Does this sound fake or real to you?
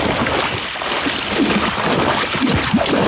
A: real